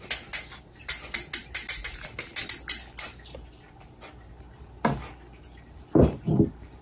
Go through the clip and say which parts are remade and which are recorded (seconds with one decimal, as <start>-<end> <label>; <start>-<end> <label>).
0.0-5.3 recorded; 5.3-6.8 remade